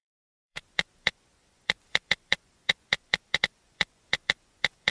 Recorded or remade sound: remade